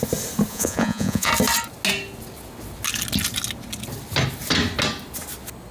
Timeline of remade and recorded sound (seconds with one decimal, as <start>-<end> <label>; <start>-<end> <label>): 0.0-0.5 recorded; 0.5-1.3 remade; 1.3-5.7 recorded